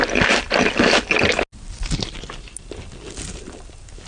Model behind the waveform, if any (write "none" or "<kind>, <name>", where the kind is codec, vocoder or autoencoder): none